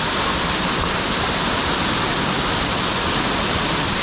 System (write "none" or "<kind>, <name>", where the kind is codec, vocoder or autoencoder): none